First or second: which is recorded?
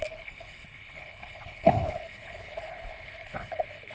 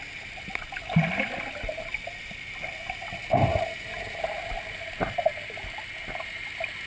second